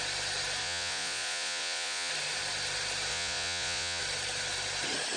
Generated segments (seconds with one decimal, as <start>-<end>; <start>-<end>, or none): 0.6-2.1; 3.1-4.0